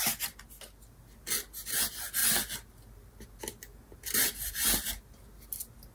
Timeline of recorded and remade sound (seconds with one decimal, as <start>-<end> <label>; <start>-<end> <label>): 0.0-5.9 recorded